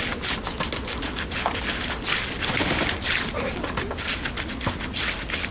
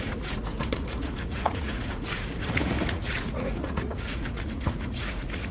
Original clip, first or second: first